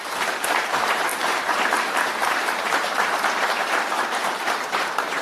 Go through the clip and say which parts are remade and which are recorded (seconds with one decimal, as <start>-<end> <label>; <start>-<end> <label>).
0.0-5.2 remade